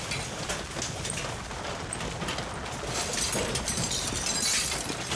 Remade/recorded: recorded